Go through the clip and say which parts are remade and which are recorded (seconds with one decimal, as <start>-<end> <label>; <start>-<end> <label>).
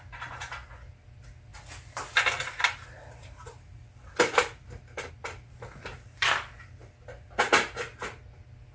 0.0-8.7 recorded